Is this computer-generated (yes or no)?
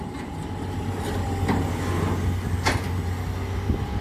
no